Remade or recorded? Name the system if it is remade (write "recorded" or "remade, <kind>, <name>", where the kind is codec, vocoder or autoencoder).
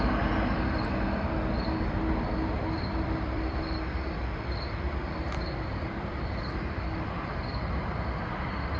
remade, vocoder, BigVGAN v2